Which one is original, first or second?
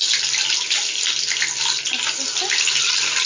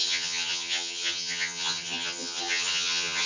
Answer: first